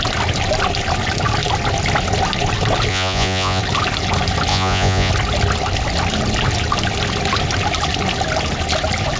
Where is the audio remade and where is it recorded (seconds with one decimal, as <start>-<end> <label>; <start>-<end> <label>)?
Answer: 0.0-2.9 recorded; 2.9-3.6 remade; 3.6-4.5 recorded; 4.5-5.1 remade; 5.1-9.2 recorded